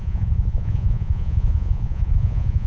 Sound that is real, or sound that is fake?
fake